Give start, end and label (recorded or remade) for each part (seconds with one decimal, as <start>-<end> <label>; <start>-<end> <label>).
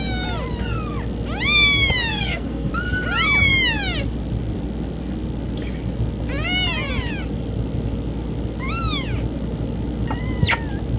0.0-2.1 recorded; 2.1-2.7 remade; 2.7-11.0 recorded